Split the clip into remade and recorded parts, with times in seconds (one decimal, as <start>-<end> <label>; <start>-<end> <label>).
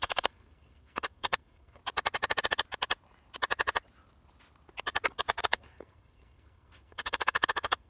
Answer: 0.0-1.8 remade; 1.8-5.4 recorded; 5.4-7.9 remade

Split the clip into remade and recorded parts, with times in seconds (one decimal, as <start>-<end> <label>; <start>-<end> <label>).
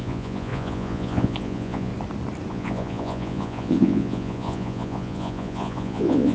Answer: 0.0-1.9 remade; 1.9-2.5 recorded; 2.5-6.3 remade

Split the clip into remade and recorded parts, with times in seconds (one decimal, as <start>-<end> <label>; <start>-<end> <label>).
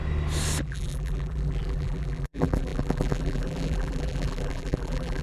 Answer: 0.0-0.6 recorded; 0.6-5.2 remade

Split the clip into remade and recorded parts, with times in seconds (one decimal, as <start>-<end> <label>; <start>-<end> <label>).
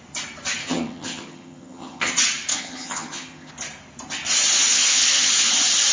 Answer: 0.0-0.6 recorded; 0.6-2.1 remade; 2.1-2.5 recorded; 2.5-3.5 remade; 3.5-4.7 recorded; 4.7-5.3 remade; 5.3-5.9 recorded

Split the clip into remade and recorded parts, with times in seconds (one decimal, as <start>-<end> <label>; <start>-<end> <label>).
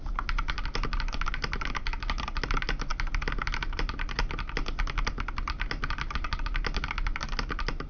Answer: 0.0-7.9 recorded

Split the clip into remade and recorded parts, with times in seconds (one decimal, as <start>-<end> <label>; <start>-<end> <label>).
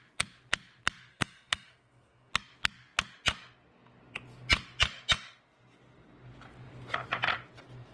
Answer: 0.0-1.1 recorded; 1.1-2.3 remade; 2.3-7.9 recorded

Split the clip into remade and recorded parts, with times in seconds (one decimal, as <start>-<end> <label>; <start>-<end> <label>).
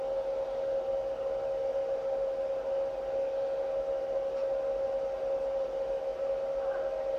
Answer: 0.0-7.2 recorded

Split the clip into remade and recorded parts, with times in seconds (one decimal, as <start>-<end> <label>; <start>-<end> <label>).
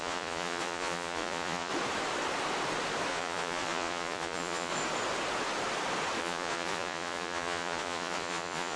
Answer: 0.0-1.7 remade; 1.7-3.1 recorded; 3.1-4.7 remade; 4.7-6.2 recorded; 6.2-8.8 remade